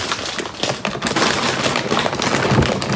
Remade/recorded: recorded